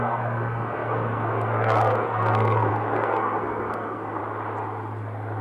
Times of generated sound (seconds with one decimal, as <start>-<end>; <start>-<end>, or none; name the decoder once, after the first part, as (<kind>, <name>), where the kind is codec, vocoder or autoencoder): 0.0-4.2 (codec, SNAC)